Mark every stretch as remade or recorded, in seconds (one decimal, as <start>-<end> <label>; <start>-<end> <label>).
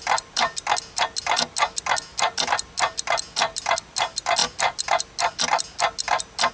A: 0.0-6.5 recorded